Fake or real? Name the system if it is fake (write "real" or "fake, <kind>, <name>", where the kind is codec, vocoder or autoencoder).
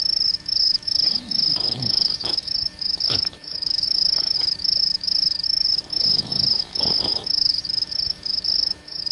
fake, autoencoder, DAC-VAE